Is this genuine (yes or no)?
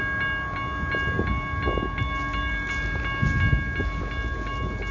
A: yes